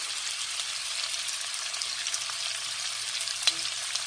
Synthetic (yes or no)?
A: no